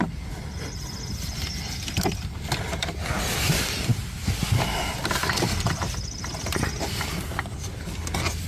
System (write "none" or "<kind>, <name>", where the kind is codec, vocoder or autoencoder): none